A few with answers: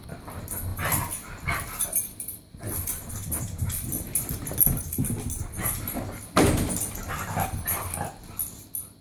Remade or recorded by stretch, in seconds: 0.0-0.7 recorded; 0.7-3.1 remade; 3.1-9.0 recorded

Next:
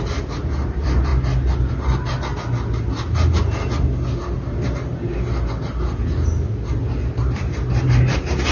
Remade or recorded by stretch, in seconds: 0.0-1.1 remade; 1.1-1.7 recorded; 1.7-2.3 remade; 2.3-7.2 recorded; 7.2-8.5 remade

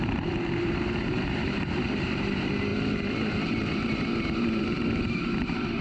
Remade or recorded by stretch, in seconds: 0.0-2.7 remade; 2.7-3.5 recorded; 3.5-5.8 remade